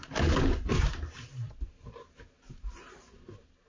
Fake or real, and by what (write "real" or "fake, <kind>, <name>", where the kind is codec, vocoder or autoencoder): real